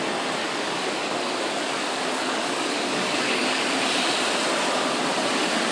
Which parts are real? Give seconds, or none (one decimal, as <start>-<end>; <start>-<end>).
0.0-0.4; 3.6-5.7